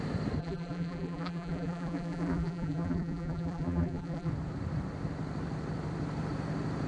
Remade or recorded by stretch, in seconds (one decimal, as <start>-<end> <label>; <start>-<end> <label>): 0.0-0.4 recorded; 0.4-4.3 remade; 4.3-6.9 recorded